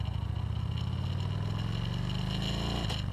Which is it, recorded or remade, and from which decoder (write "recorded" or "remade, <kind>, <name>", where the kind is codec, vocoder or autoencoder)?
recorded